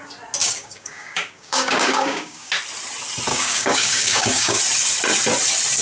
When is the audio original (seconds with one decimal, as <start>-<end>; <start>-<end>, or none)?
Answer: 0.0-0.4; 2.5-3.3; 4.6-5.8